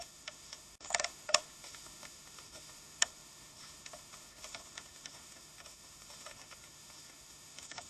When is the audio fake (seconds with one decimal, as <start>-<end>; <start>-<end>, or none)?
0.0-7.9